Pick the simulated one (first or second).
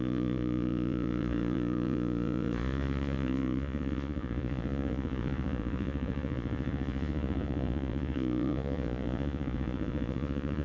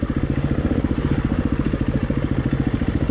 first